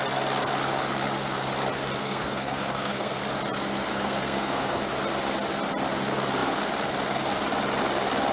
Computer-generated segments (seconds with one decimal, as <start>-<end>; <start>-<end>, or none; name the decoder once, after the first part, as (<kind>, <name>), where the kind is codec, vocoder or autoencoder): 2.0-3.2 (codec, SNAC); 3.9-4.8